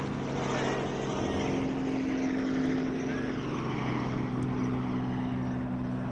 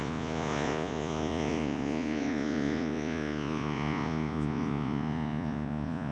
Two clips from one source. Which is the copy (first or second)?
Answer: second